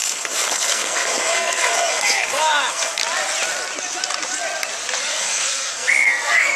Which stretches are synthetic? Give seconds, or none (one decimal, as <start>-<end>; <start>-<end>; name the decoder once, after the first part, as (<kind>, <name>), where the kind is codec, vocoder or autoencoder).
0.0-3.0 (codec, SNAC); 5.1-6.6